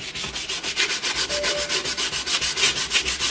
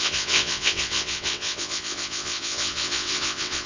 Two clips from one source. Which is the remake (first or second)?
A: second